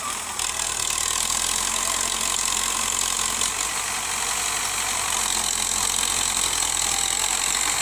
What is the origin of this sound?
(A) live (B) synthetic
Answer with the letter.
A